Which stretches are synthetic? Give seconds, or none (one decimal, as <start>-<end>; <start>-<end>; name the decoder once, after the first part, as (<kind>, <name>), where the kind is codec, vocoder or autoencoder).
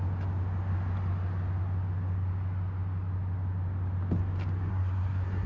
4.7-5.5 (codec, SNAC)